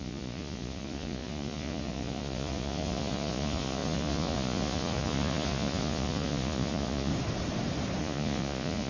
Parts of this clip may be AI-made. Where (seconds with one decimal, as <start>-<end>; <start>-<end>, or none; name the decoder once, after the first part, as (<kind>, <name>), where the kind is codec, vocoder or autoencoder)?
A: 0.0-7.1 (vocoder, Vocos); 8.0-8.9